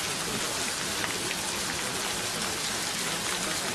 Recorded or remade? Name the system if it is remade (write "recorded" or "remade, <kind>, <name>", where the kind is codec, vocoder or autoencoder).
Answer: recorded